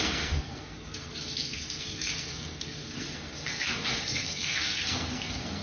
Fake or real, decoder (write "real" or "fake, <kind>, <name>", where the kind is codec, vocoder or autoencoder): fake, codec, SNAC